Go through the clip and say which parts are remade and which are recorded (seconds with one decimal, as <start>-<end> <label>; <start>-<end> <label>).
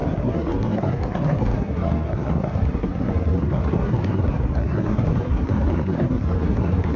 0.0-7.0 remade